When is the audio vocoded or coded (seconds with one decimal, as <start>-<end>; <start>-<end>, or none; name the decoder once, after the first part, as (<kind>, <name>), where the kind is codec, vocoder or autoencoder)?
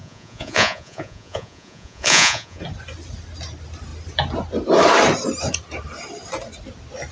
0.0-2.6 (vocoder, Vocos)